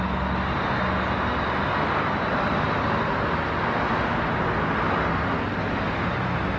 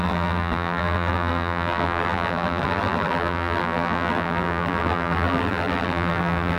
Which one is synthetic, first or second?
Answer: second